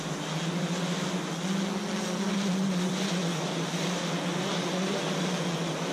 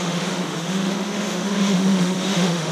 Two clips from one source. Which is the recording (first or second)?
first